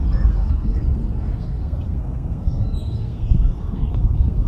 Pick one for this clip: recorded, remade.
remade